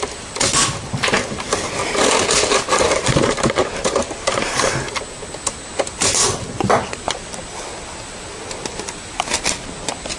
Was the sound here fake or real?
real